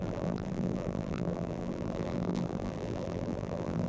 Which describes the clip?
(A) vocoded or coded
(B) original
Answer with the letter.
A